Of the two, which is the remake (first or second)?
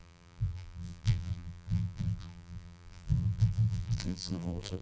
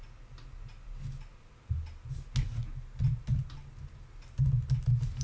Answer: first